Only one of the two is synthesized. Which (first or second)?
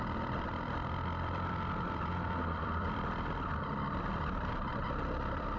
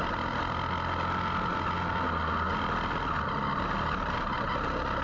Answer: first